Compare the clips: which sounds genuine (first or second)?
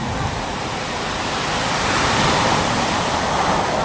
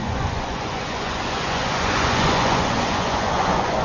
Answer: first